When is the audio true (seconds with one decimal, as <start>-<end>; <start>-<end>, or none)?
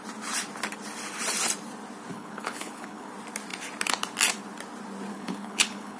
0.0-2.1; 3.1-5.1